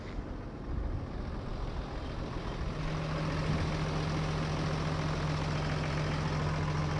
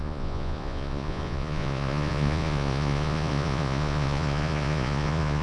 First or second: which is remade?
second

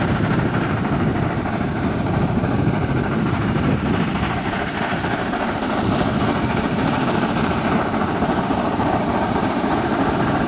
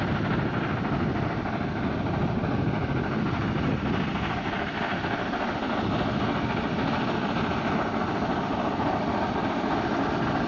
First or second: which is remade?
first